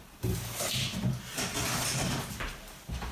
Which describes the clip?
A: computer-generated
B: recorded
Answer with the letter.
B